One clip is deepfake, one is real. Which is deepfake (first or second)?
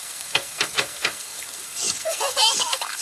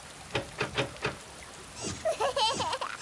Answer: first